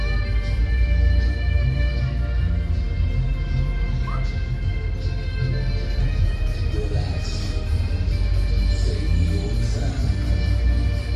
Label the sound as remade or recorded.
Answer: recorded